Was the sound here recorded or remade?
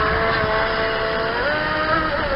recorded